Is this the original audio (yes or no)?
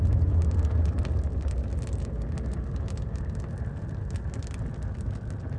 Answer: yes